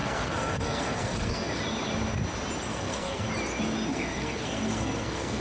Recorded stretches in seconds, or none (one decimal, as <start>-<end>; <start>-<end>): 1.6-2.7; 3.3-3.9